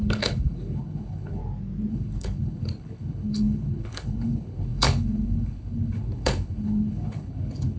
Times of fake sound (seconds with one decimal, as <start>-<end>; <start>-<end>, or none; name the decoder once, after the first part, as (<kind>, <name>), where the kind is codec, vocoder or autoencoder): 0.0-1.4 (codec, HILCodec); 1.9-7.8

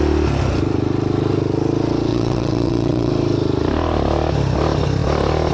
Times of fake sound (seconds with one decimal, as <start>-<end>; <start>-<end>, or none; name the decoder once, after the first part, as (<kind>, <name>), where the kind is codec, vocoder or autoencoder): 2.1-3.1 (vocoder, WaveNeXt)

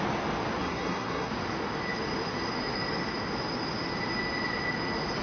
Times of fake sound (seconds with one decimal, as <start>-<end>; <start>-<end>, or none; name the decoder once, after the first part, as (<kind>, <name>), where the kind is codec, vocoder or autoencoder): 0.6-1.3 (codec, SNAC)

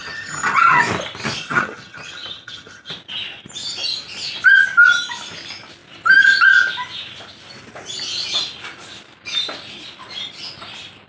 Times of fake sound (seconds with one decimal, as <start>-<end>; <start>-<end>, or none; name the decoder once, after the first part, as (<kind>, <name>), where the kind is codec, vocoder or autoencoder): 0.0-0.8 (vocoder, HiFi-GAN); 1.4-2.9

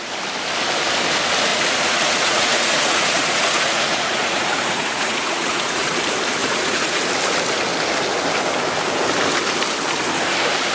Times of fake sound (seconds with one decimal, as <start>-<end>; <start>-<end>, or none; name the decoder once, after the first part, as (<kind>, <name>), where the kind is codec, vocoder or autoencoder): 1.5-6.0 (vocoder, Vocos); 6.4-7.0

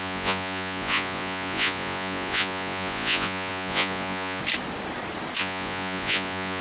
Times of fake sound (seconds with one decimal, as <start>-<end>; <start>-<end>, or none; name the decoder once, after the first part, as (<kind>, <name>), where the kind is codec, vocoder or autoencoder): 0.0-4.4 (vocoder, Vocos); 5.4-6.6

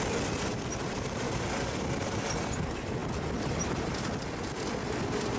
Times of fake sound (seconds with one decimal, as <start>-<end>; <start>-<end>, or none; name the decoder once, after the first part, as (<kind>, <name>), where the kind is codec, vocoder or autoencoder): 0.0-3.0 (vocoder, BigVGAN v2); 5.0-5.4

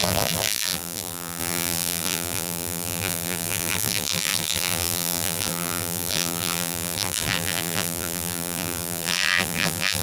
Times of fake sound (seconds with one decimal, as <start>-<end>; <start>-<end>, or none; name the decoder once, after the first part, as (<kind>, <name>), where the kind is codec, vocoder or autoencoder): 0.0-10.0 (vocoder, BigVGAN v2)